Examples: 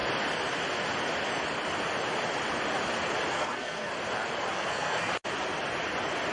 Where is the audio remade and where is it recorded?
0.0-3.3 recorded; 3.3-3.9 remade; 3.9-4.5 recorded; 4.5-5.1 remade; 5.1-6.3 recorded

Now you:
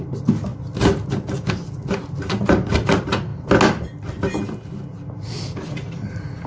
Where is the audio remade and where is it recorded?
0.0-6.5 recorded

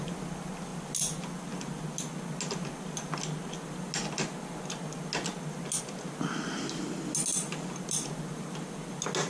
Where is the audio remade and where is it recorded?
0.0-9.3 recorded